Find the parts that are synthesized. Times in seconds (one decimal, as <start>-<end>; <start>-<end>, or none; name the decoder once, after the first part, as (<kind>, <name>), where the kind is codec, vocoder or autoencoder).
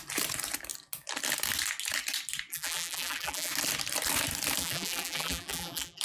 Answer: 2.5-3.5 (vocoder, BigVGAN v2); 4.6-6.0